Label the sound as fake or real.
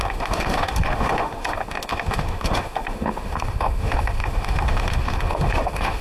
fake